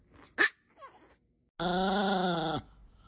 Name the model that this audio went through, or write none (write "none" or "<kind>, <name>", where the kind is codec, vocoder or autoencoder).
none